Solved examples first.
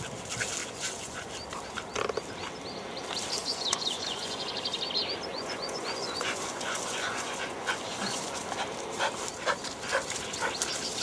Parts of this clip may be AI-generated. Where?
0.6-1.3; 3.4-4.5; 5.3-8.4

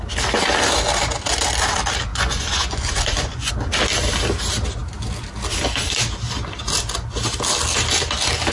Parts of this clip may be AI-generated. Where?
2.1-3.5

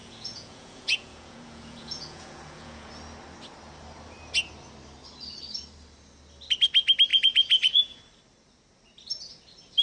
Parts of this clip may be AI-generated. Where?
0.0-2.9; 7.1-8.0

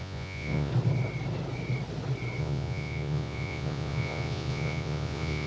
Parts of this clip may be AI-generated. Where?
0.0-0.7; 2.4-5.5

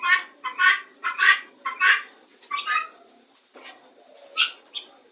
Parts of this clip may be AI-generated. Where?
0.9-1.5

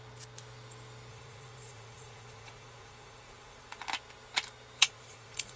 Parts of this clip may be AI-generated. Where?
1.1-3.8; 4.8-5.6

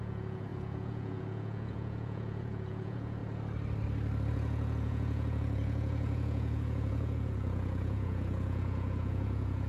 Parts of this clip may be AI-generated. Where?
0.0-3.2; 4.3-9.7

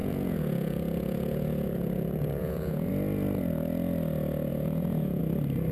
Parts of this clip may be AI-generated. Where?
0.0-2.9; 4.5-5.2